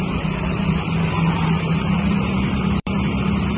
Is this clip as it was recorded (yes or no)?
no